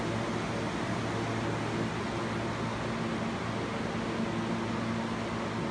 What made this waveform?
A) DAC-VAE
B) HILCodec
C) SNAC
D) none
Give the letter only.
D